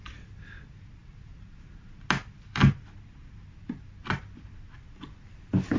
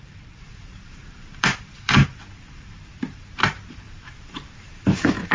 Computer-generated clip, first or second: second